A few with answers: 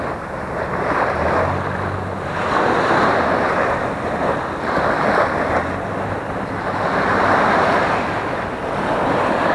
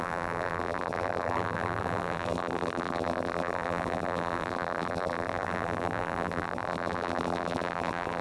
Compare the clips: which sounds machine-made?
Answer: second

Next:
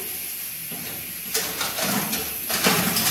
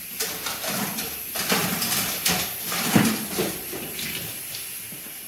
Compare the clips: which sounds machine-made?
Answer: second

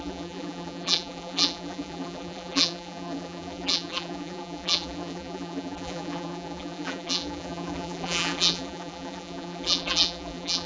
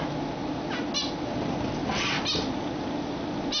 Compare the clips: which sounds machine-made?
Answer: first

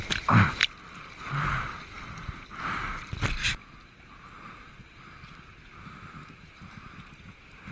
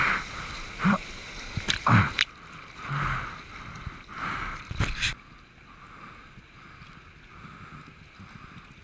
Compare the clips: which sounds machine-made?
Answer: first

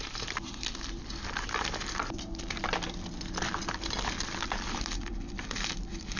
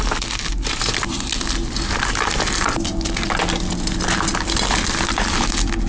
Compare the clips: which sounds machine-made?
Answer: first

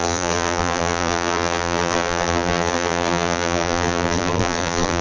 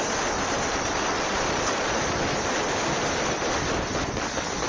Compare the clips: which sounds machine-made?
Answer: first